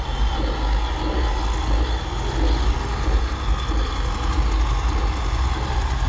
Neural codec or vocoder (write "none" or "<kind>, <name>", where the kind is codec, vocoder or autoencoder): none